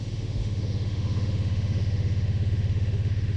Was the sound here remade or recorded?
remade